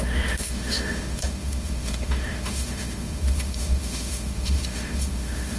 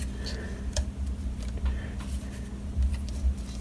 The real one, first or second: second